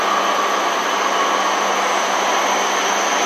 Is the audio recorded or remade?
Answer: recorded